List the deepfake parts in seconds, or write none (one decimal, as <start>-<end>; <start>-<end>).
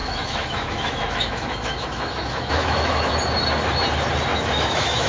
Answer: 0.0-3.1; 4.3-5.1